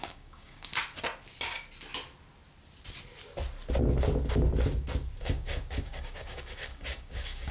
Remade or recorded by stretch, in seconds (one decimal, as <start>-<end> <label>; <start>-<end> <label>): 0.0-0.7 remade; 0.7-5.2 recorded; 5.2-7.5 remade